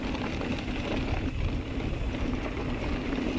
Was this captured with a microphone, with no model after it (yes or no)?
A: yes